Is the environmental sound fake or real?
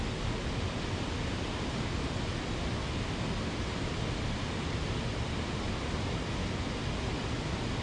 real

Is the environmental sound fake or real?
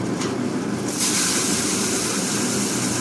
real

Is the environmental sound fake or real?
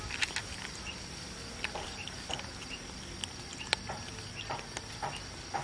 real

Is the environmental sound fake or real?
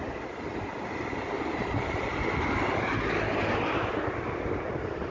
real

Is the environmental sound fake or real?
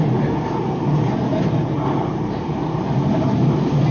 real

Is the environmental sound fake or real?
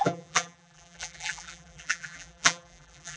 fake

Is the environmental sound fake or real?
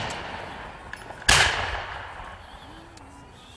real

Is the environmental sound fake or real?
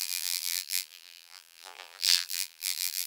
fake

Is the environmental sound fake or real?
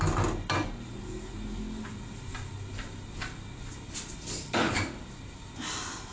real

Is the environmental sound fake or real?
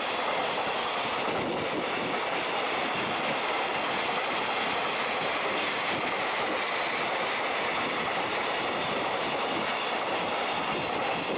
real